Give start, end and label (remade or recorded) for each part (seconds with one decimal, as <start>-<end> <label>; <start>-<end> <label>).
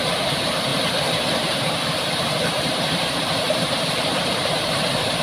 0.0-5.2 remade